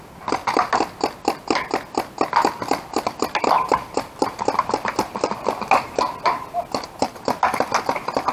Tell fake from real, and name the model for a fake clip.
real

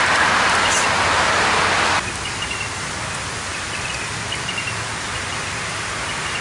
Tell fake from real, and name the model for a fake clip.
real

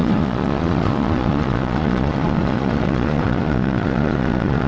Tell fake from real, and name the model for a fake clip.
fake, vocoder, Vocos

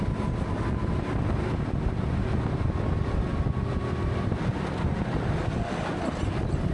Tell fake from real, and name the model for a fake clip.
real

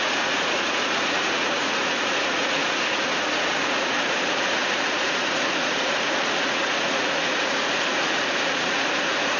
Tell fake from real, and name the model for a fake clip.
fake, vocoder, Vocos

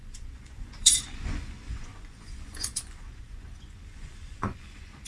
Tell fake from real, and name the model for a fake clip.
fake, vocoder, Vocos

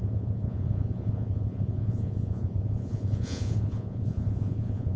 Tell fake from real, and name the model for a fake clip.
fake, vocoder, Vocos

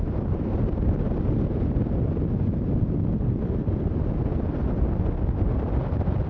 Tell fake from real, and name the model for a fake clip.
real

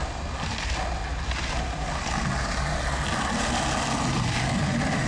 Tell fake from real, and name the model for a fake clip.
real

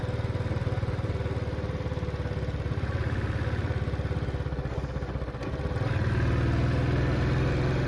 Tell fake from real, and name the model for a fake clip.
real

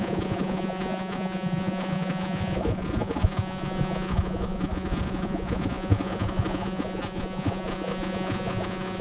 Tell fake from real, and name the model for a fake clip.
fake, vocoder, Vocos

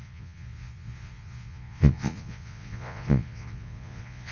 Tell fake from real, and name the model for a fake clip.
fake, vocoder, Vocos